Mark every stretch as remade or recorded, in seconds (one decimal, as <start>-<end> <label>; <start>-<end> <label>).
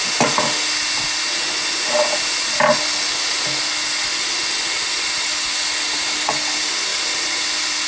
0.0-7.9 recorded